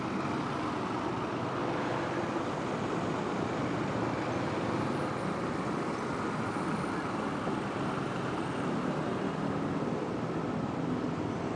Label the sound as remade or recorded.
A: recorded